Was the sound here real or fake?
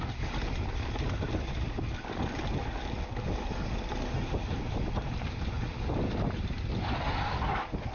real